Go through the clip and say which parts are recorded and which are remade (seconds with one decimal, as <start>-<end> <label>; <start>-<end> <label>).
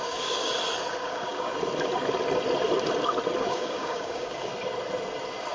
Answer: 0.0-0.5 remade; 0.5-1.0 recorded; 1.0-1.5 remade; 1.5-3.4 recorded; 3.4-4.5 remade; 4.5-5.5 recorded